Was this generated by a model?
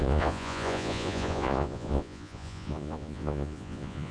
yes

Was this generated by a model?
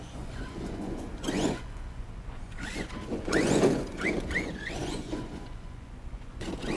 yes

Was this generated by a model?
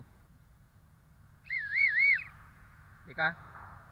yes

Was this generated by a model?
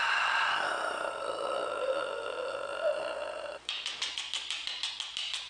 no